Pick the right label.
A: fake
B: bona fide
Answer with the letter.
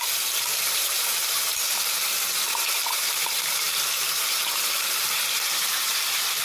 A